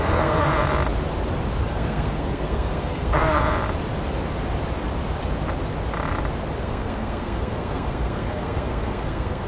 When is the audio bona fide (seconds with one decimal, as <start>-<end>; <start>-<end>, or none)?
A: 0.5-1.7; 3.4-6.6